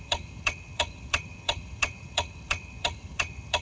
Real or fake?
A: fake